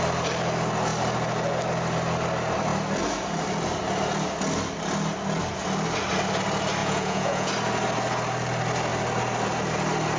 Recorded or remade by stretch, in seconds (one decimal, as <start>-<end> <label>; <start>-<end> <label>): 0.0-6.8 recorded; 6.8-7.5 remade; 7.5-10.2 recorded